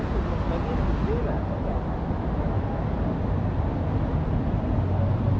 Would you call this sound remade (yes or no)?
no